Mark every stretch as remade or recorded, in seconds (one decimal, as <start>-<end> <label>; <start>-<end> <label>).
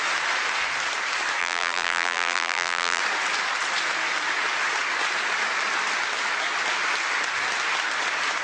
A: 0.0-1.4 recorded; 1.4-3.0 remade; 3.0-8.4 recorded